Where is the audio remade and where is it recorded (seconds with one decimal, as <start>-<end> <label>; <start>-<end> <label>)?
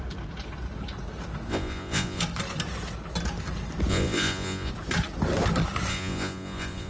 0.0-1.5 recorded; 1.5-2.2 remade; 2.2-3.9 recorded; 3.9-4.7 remade; 4.7-5.9 recorded; 5.9-6.9 remade